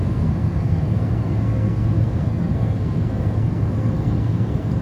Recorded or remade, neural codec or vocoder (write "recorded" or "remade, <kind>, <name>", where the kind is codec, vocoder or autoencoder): remade, codec, SNAC